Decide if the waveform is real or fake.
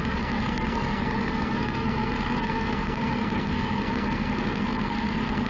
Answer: fake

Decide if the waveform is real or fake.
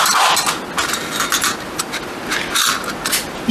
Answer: real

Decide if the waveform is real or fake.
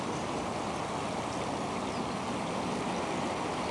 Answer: real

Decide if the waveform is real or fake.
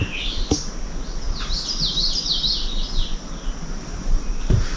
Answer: real